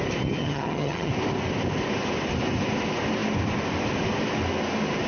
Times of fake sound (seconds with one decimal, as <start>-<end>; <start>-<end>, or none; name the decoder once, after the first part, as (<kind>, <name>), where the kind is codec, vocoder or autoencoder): 0.4-1.1 (vocoder, HiFi-GAN)

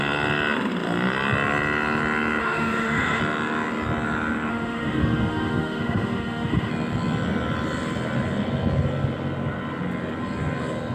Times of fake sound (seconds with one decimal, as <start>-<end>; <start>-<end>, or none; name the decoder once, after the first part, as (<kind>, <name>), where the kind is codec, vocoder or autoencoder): 2.4-3.2 (autoencoder, DAC-VAE); 4.5-6.7

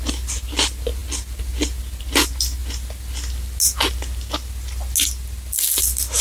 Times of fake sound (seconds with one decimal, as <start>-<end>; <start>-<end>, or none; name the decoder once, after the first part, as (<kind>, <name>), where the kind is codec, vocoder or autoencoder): none

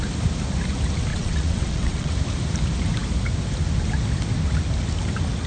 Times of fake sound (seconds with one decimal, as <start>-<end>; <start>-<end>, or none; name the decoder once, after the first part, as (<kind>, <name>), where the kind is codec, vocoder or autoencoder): 1.1-2.1 (vocoder, WaveNeXt)